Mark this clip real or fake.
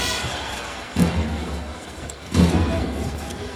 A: fake